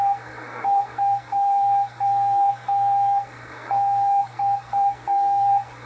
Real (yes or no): no